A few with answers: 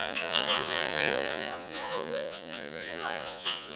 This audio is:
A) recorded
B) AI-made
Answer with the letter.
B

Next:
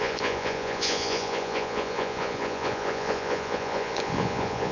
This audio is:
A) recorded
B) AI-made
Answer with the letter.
B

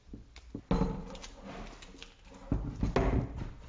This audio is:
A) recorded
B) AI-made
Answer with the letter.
A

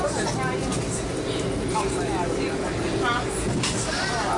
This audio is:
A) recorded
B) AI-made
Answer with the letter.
A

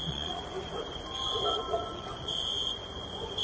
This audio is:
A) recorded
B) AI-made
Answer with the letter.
B